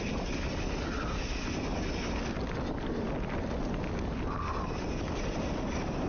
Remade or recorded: recorded